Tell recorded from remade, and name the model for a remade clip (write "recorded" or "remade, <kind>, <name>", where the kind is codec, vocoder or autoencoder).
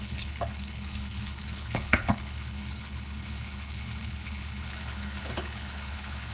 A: remade, codec, HILCodec